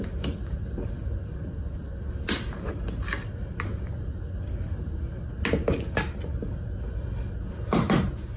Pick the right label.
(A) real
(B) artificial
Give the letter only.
A